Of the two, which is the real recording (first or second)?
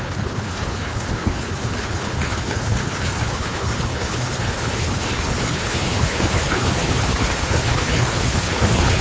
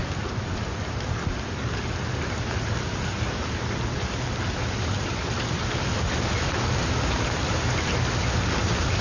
second